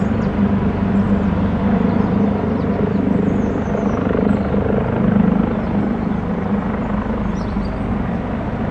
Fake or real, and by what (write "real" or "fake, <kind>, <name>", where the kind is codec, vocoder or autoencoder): real